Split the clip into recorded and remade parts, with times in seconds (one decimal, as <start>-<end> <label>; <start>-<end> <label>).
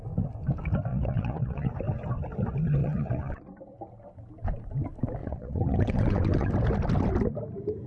0.0-0.9 recorded; 0.9-1.7 remade; 1.7-2.8 recorded; 2.8-3.4 remade; 3.4-5.2 recorded; 5.2-6.5 remade; 6.5-7.9 recorded